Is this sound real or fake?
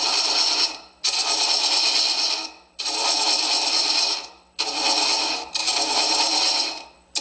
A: real